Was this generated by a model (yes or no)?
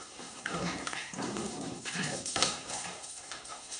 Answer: yes